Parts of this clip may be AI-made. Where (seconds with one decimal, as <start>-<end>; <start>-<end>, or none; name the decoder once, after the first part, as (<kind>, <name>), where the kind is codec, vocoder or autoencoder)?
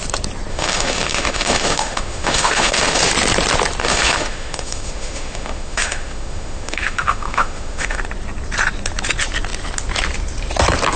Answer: 0.5-3.0 (autoencoder, DAC-VAE); 3.8-8.0